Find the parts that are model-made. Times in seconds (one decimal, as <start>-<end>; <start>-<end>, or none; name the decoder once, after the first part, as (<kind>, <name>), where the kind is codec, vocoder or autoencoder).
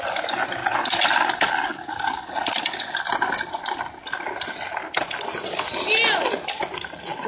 none